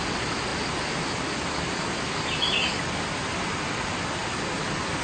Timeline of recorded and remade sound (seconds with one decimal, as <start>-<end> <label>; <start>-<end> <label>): 0.0-5.0 recorded

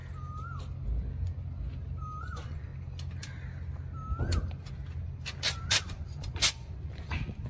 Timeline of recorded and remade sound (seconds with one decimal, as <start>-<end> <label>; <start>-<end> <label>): 0.0-2.2 recorded; 2.2-2.7 remade; 2.7-5.7 recorded; 5.7-7.5 remade

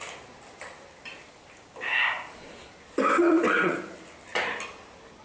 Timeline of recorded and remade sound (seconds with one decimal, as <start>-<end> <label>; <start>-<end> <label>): 0.0-3.2 recorded; 3.2-3.8 remade; 3.8-5.2 recorded

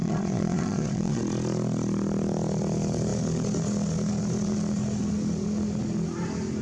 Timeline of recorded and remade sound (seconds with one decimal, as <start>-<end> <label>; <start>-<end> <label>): 0.0-1.2 remade; 1.2-6.6 recorded

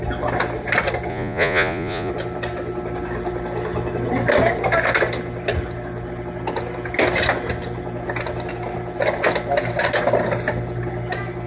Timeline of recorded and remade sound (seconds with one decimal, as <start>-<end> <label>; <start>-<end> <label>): 0.0-1.1 recorded; 1.1-2.1 remade; 2.1-11.5 recorded

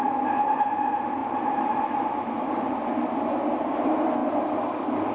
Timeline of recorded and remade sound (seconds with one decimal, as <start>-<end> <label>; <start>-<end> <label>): 0.0-5.1 recorded

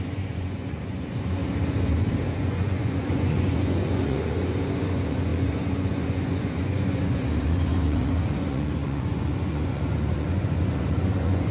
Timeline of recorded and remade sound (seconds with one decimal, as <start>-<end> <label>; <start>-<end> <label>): 0.0-1.4 remade; 1.4-2.4 recorded; 2.4-11.5 remade

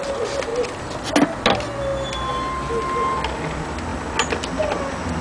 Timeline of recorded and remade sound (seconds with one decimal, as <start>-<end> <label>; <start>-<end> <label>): 0.0-5.2 recorded